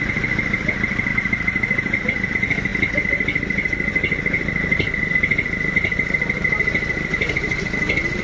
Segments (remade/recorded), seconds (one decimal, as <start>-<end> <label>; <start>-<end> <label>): 0.0-1.1 recorded; 1.1-2.3 remade; 2.3-8.2 recorded